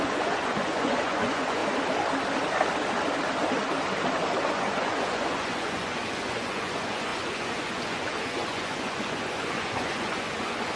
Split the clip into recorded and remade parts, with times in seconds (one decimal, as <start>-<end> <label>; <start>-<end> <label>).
0.0-1.6 remade; 1.6-4.5 recorded; 4.5-10.8 remade